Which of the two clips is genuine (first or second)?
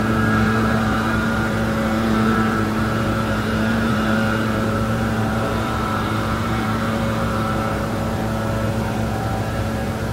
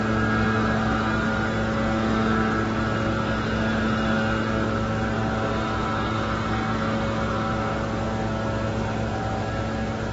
second